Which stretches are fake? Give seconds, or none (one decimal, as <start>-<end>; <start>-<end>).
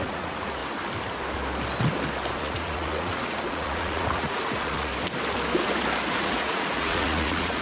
0.0-0.6; 2.4-4.9; 6.2-7.6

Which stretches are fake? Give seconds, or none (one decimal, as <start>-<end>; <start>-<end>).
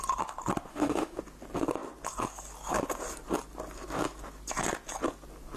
0.7-1.2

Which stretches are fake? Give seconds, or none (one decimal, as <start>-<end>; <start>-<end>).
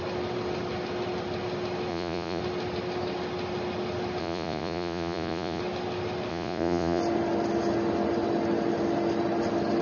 1.9-2.4; 4.2-5.6; 6.3-7.0